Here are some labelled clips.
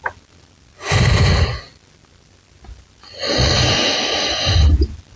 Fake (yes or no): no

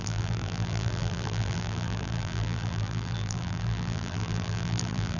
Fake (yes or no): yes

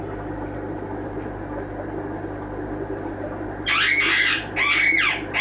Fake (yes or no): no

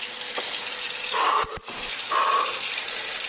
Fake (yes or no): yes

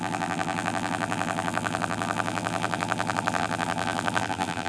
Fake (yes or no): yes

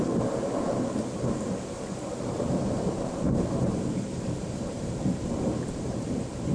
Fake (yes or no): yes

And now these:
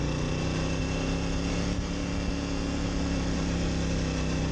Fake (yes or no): no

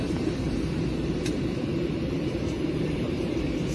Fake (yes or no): yes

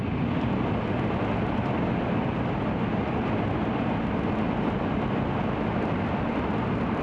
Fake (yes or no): no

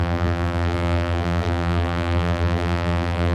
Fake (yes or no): yes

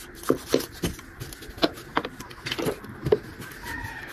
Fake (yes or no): no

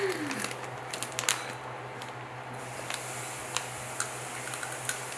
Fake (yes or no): no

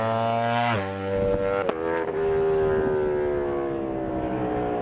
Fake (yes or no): no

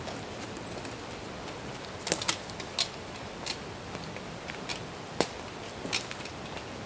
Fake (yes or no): no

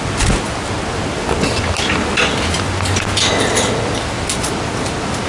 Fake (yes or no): no